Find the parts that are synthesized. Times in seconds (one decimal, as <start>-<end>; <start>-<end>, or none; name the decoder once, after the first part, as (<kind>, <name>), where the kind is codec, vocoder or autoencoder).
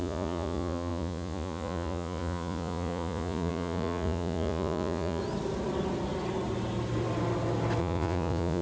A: 0.0-5.2 (vocoder, Vocos); 7.8-8.6